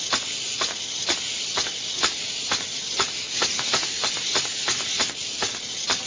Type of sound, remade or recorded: recorded